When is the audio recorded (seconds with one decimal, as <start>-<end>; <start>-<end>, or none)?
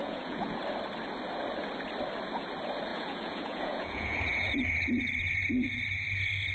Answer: 0.6-2.9; 4.5-6.5